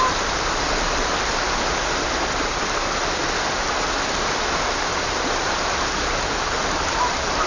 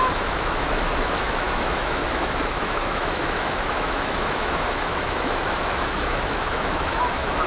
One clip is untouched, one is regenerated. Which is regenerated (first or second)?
second